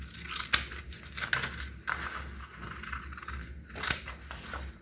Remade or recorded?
recorded